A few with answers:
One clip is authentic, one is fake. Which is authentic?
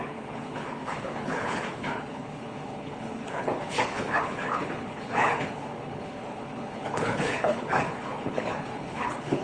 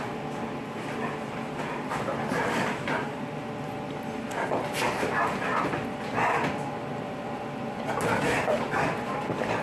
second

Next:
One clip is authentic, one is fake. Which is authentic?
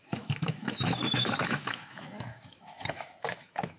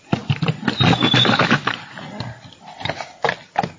second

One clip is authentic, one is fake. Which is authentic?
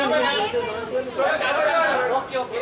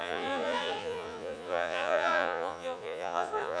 first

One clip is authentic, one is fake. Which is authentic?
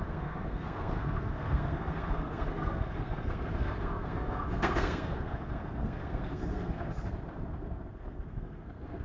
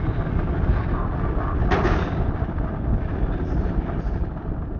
second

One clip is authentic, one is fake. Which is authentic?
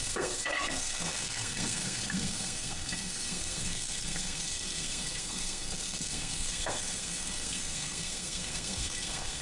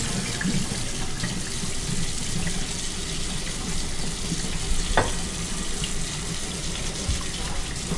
second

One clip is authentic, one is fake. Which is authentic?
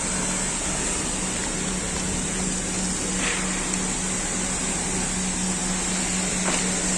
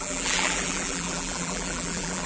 first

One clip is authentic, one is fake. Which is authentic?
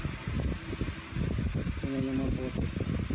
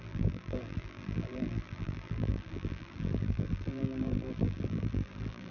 first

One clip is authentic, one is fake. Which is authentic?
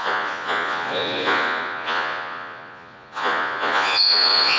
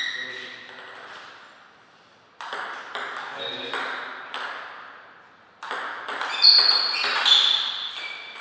second